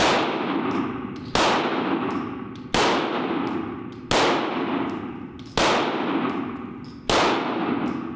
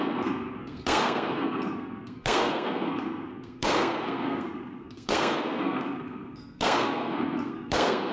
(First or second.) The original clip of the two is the first